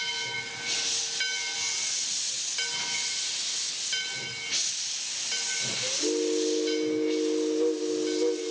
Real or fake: real